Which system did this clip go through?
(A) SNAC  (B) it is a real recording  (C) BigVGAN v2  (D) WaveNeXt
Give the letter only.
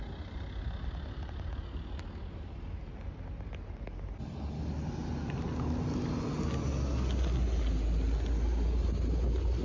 B